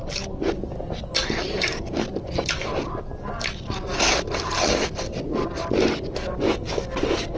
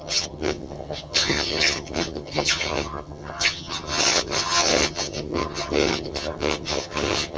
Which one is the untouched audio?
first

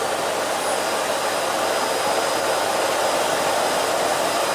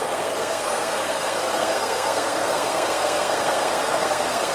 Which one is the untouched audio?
first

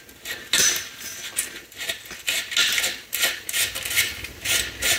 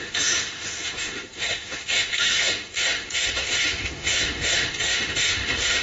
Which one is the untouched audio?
first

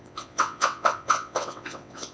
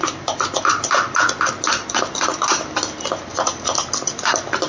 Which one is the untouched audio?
second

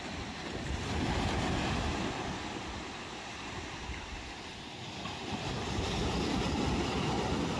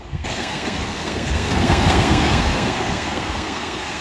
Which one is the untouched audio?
first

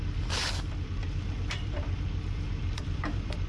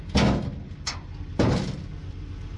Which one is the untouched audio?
second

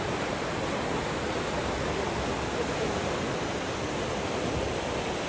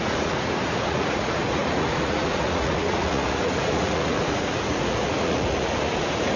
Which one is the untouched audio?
first